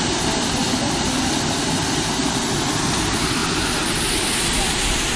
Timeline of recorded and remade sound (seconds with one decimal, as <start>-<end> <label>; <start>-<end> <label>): 0.0-5.2 recorded